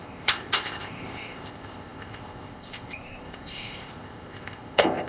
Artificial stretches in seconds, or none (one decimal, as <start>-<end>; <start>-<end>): 0.0-5.1